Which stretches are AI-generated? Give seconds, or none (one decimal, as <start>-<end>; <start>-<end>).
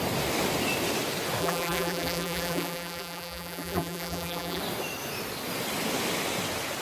1.4-4.6